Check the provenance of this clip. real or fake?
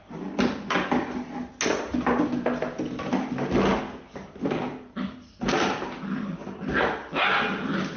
real